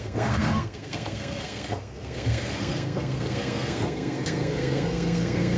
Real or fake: fake